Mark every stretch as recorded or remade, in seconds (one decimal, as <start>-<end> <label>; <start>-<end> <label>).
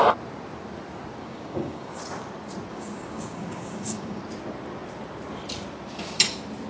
0.0-1.2 recorded; 1.2-2.0 remade; 2.0-2.7 recorded; 2.7-4.2 remade; 4.2-6.7 recorded